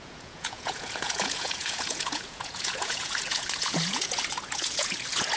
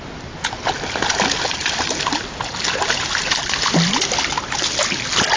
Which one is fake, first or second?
first